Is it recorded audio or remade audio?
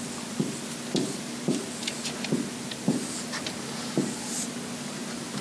recorded